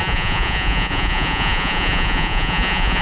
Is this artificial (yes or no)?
yes